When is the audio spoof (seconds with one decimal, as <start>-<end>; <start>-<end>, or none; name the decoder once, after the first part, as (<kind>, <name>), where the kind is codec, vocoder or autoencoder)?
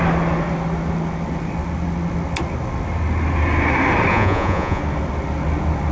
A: 4.1-4.8 (vocoder, Vocos)